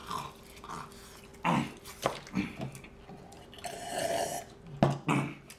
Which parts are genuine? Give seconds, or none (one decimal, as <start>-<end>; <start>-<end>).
0.0-5.6